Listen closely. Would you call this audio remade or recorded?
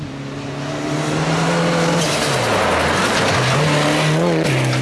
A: recorded